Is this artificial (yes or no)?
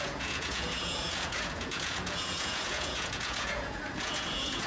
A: yes